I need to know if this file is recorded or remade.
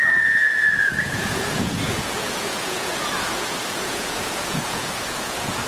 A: remade